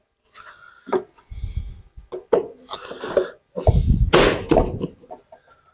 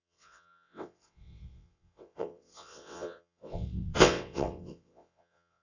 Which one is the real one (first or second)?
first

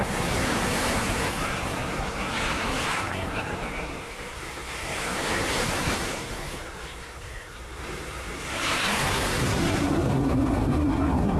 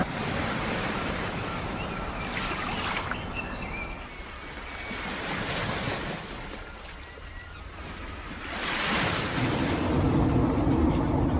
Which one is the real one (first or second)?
second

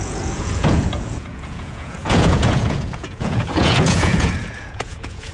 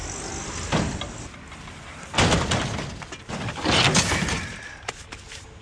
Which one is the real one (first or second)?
second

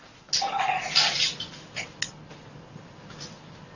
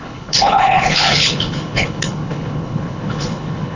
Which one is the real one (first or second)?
first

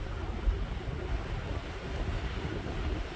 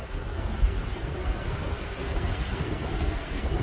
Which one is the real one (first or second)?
first